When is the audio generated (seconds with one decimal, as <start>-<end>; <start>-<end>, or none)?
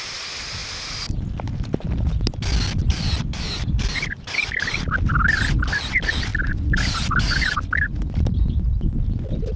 none